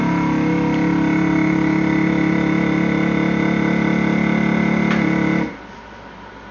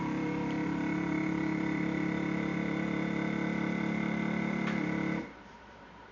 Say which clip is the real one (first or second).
first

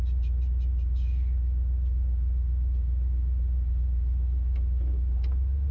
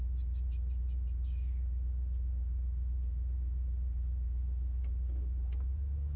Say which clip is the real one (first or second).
first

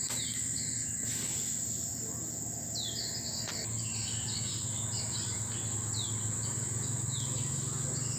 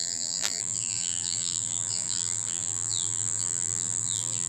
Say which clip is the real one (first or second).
first